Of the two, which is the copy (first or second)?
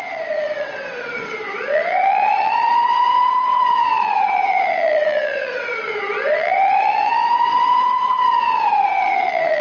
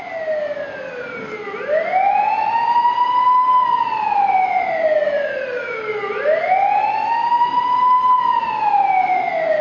first